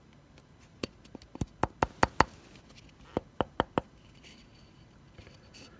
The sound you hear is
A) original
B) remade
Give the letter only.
A